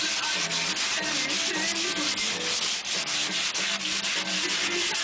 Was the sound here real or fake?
real